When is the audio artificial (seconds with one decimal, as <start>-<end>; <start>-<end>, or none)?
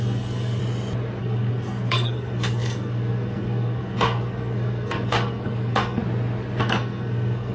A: 0.0-0.6; 1.2-6.0; 6.6-7.5